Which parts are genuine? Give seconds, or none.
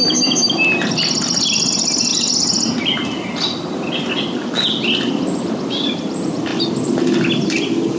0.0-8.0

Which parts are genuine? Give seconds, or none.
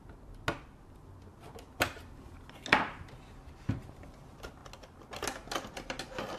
0.0-6.4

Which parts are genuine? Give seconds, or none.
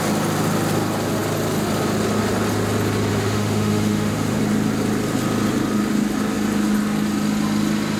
0.0-3.1; 4.4-8.0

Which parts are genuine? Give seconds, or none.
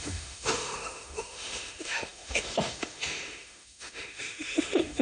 none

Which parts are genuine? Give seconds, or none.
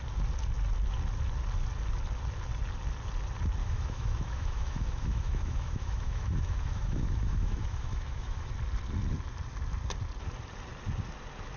0.0-3.6; 8.5-11.6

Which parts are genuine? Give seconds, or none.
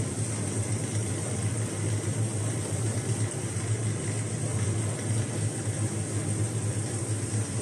0.0-7.6